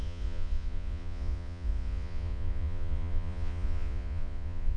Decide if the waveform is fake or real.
fake